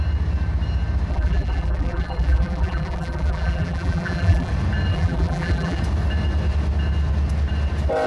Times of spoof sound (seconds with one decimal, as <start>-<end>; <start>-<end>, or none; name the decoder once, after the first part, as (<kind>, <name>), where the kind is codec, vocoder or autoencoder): 1.1-4.5 (vocoder, BigVGAN v2); 4.9-5.8